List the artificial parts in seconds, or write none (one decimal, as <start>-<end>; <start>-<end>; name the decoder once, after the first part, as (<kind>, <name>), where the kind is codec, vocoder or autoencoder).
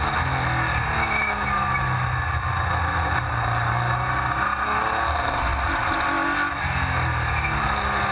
5.5-6.7 (vocoder, BigVGAN v2)